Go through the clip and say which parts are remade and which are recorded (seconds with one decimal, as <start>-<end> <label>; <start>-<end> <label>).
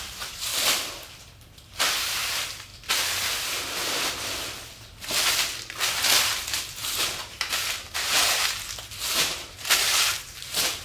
0.0-0.5 remade; 0.5-1.2 recorded; 1.2-2.7 remade; 2.7-6.2 recorded; 6.2-10.8 remade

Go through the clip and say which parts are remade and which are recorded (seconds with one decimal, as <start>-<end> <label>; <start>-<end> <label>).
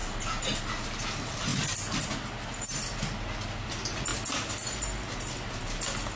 0.0-0.8 recorded; 0.8-1.5 remade; 1.5-3.0 recorded; 3.0-4.1 remade; 4.1-5.6 recorded; 5.6-6.2 remade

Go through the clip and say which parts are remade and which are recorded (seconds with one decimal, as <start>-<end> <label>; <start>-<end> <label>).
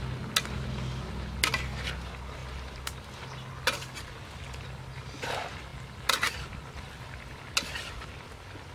0.0-8.7 recorded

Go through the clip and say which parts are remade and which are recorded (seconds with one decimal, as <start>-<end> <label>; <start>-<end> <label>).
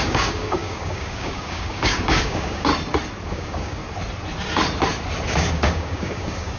0.0-2.7 remade; 2.7-3.3 recorded; 3.3-3.8 remade; 3.8-5.3 recorded; 5.3-6.6 remade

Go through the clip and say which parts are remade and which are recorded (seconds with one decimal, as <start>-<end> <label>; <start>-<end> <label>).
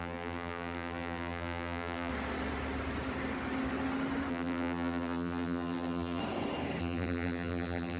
0.0-2.1 remade; 2.1-4.3 recorded; 4.3-6.2 remade; 6.2-6.8 recorded; 6.8-8.0 remade